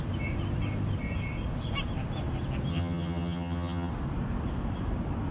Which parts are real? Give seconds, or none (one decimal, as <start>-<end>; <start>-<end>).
0.0-2.7; 3.9-5.3